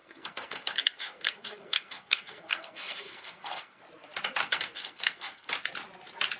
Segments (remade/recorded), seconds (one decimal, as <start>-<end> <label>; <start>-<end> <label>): 0.0-3.8 remade; 3.8-4.4 recorded; 4.4-5.5 remade; 5.5-6.4 recorded